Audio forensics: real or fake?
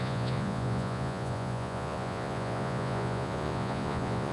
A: fake